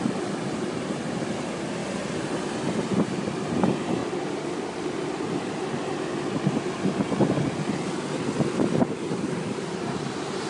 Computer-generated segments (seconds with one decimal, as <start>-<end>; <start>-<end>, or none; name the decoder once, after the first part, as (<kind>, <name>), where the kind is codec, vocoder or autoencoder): 0.0-1.8 (vocoder, BigVGAN v2); 2.7-4.0; 8.9-10.5